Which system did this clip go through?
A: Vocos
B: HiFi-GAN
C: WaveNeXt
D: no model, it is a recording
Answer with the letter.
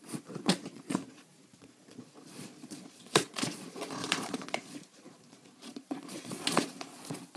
A